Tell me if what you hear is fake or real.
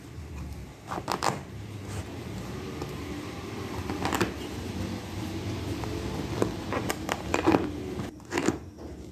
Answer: real